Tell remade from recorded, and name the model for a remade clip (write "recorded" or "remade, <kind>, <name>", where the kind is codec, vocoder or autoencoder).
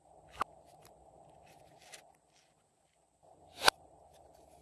recorded